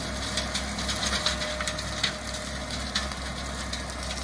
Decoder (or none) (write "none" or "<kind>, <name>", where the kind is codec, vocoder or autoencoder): none